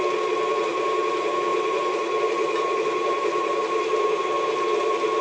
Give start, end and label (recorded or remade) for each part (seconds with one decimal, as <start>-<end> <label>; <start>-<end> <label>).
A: 0.0-5.2 recorded